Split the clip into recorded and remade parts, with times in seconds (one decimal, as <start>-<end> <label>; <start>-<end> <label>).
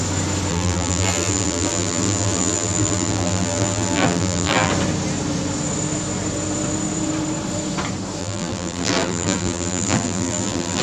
0.0-0.5 recorded; 0.5-4.7 remade; 4.7-8.2 recorded; 8.2-10.8 remade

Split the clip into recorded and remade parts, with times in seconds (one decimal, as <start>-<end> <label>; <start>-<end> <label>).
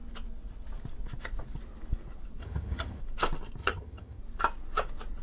0.0-2.4 recorded; 2.4-3.0 remade; 3.0-3.6 recorded; 3.6-4.2 remade; 4.2-5.2 recorded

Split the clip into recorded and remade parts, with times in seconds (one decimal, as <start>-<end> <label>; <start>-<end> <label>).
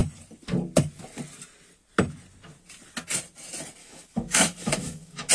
0.0-3.8 recorded; 3.8-5.3 remade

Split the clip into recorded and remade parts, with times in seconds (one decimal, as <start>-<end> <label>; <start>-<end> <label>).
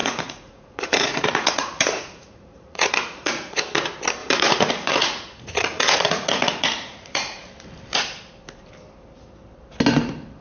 0.0-3.6 remade; 3.6-4.2 recorded; 4.2-7.5 remade; 7.5-10.4 recorded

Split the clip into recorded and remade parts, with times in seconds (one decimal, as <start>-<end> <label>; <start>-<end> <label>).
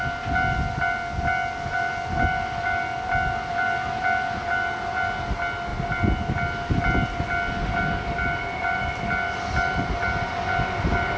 0.0-11.2 recorded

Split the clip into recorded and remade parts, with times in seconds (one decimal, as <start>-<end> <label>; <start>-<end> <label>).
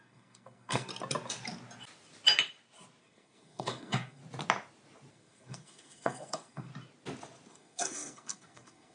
0.0-0.9 remade; 0.9-3.0 recorded; 3.0-4.2 remade; 4.2-5.1 recorded; 5.1-6.7 remade; 6.7-7.5 recorded; 7.5-8.9 remade